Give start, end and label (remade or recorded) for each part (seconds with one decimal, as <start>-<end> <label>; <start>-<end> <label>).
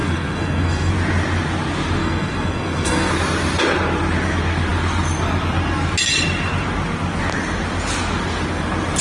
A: 0.0-0.9 remade; 0.9-2.0 recorded; 2.0-3.1 remade; 3.1-9.0 recorded